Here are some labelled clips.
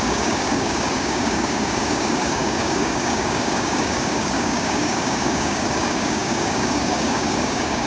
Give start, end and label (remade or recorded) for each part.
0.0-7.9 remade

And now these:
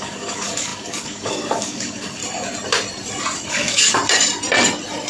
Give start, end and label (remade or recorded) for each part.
0.0-2.2 remade; 2.2-3.5 recorded; 3.5-4.0 remade; 4.0-5.1 recorded

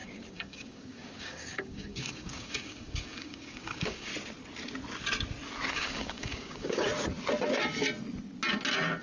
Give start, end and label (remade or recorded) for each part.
0.0-4.1 remade; 4.1-5.7 recorded; 5.7-6.9 remade; 6.9-9.0 recorded

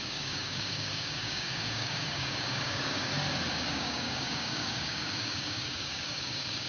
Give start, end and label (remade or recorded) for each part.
0.0-3.1 remade; 3.1-3.7 recorded; 3.7-6.7 remade

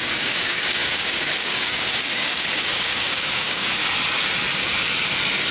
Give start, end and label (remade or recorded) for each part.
0.0-3.8 remade; 3.8-5.5 recorded

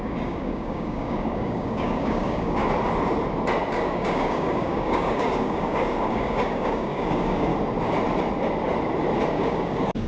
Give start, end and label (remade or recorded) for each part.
0.0-2.6 remade; 2.6-3.7 recorded; 3.7-7.5 remade; 7.5-9.3 recorded; 9.3-10.1 remade